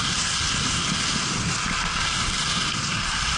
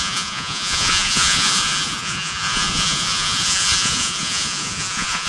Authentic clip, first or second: first